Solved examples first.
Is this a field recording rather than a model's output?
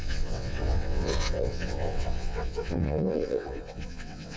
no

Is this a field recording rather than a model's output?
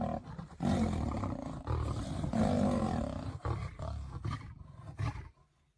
yes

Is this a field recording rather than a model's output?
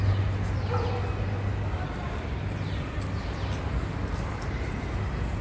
yes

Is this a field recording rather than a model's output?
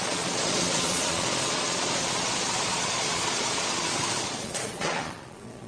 no